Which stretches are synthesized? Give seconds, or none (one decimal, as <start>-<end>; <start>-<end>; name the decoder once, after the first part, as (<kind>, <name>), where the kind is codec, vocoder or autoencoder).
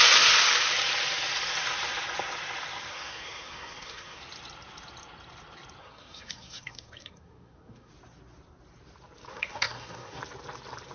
2.9-4.2 (codec, SNAC); 5.8-7.9; 9.3-10.2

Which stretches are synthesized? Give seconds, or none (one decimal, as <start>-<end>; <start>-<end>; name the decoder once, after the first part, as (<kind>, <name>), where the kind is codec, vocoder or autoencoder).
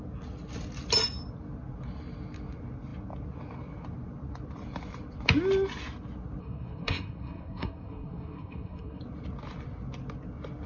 6.4-9.0 (codec, SNAC)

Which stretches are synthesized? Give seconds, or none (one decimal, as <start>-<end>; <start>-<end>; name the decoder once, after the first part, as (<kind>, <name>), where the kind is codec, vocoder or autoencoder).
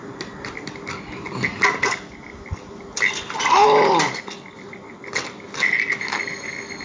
none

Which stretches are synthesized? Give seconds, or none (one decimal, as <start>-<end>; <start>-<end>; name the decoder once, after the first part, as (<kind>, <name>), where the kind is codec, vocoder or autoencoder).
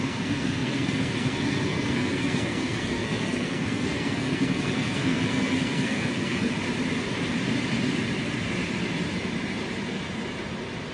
0.0-6.6 (codec, SNAC)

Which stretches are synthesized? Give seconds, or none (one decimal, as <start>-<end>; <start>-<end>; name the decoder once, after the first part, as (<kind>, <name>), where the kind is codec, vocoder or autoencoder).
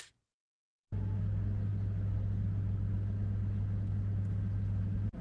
none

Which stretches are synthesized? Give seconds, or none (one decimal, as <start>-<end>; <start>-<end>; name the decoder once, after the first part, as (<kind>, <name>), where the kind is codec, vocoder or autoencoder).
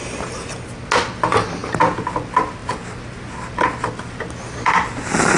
none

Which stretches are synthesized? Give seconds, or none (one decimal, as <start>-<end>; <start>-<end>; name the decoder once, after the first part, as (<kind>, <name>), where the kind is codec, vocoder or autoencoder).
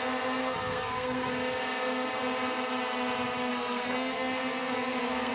0.4-1.3 (codec, SNAC); 3.5-5.3